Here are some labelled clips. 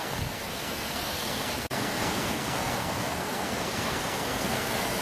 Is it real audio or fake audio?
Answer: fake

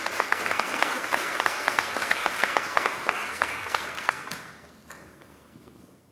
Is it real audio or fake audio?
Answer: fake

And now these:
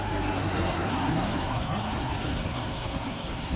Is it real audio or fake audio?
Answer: fake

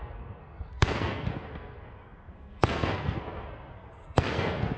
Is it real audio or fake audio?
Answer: fake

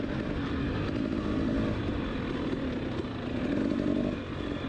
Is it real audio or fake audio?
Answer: real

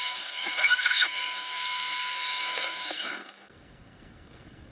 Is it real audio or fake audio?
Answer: fake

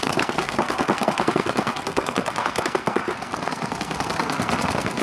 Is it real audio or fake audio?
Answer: fake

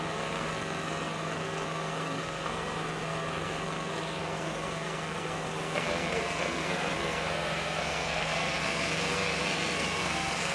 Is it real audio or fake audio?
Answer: fake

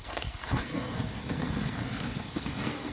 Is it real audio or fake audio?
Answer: fake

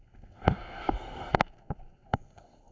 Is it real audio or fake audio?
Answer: fake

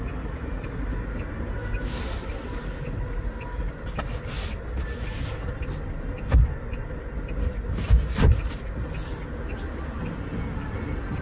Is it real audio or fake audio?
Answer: real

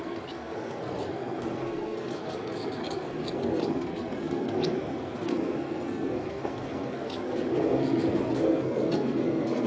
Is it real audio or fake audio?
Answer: fake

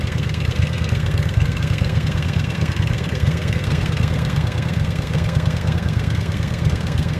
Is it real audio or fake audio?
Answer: fake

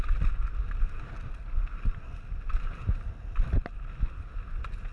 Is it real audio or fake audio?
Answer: real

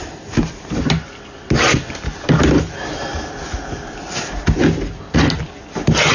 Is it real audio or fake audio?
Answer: real